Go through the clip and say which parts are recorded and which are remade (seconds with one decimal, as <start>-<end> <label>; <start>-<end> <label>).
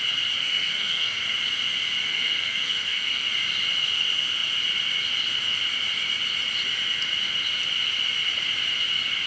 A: 0.0-0.4 recorded; 0.4-1.2 remade; 1.2-2.1 recorded; 2.1-3.3 remade; 3.3-9.3 recorded